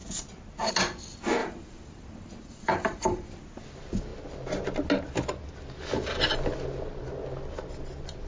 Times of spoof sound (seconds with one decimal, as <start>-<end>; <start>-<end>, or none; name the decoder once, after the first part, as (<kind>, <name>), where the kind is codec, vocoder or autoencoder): 1.4-3.4 (vocoder, BigVGAN v2)